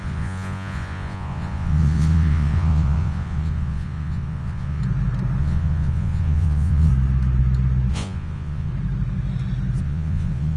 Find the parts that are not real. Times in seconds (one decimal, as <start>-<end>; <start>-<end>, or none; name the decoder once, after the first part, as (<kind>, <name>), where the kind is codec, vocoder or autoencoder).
0.0-4.8 (vocoder, Vocos); 5.4-6.9; 7.9-8.7; 9.8-10.6